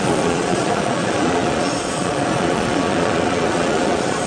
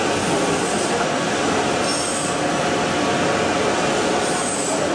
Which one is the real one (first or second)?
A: second